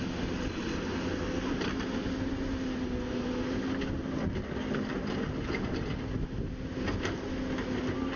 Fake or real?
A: real